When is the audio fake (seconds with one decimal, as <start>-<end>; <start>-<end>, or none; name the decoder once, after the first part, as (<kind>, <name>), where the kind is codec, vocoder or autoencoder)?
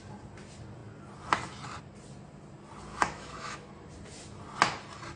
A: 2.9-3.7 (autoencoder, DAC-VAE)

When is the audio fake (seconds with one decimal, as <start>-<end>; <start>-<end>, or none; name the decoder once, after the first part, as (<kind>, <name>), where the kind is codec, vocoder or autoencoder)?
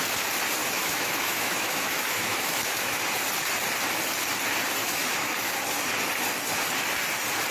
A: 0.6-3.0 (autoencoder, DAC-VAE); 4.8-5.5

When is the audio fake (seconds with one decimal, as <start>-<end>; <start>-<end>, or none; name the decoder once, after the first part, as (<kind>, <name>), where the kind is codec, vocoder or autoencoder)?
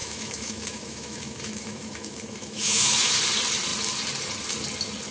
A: 0.0-3.1 (autoencoder, DAC-VAE)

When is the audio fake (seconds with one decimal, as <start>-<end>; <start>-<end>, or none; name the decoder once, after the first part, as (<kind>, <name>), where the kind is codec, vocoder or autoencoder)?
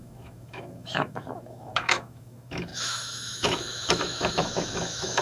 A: 0.0-5.2 (autoencoder, DAC-VAE)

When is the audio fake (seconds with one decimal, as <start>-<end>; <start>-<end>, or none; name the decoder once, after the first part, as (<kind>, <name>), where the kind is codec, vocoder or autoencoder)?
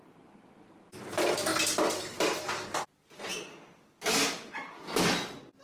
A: none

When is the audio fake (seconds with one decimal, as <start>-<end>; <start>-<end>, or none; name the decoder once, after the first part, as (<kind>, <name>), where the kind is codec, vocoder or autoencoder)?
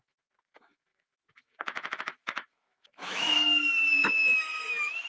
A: 0.0-5.1 (autoencoder, DAC-VAE)